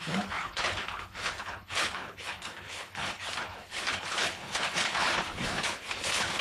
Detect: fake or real fake